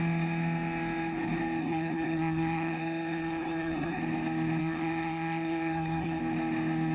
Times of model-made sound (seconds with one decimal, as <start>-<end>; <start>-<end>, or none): 1.6-4.0; 4.6-6.2